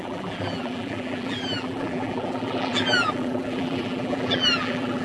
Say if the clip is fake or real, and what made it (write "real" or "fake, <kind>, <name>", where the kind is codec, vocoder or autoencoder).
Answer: fake, vocoder, BigVGAN v2